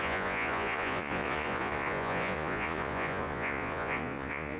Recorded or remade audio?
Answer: remade